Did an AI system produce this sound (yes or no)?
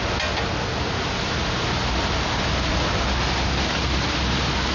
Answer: no